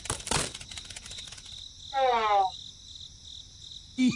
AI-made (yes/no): no